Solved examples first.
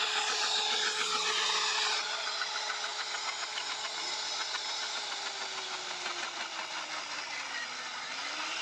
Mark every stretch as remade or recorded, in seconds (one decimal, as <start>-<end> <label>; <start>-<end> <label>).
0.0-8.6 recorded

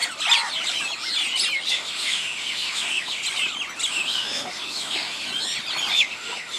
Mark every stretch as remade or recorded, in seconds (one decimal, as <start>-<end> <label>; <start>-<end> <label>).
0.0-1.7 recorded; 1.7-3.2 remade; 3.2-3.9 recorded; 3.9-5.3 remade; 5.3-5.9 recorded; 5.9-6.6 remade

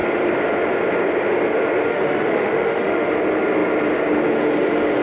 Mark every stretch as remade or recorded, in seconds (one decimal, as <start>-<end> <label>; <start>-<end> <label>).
0.0-1.9 recorded; 1.9-3.1 remade; 3.1-5.0 recorded